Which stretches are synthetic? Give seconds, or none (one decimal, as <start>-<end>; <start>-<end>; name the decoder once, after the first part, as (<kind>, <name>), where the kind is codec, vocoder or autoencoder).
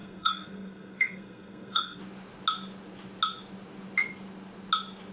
0.0-2.0 (codec, SNAC)